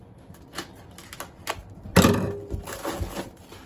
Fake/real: real